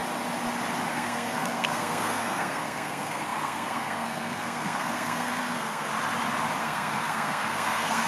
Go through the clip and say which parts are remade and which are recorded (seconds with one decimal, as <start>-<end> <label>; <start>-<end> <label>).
0.0-0.9 recorded; 0.9-5.9 remade; 5.9-6.6 recorded; 6.6-8.1 remade